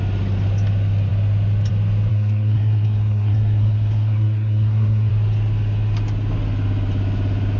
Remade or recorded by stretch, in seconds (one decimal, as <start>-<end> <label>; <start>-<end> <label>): 0.0-2.1 recorded; 2.1-5.1 remade; 5.1-7.6 recorded